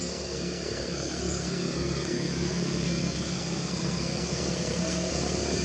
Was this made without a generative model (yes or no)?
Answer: no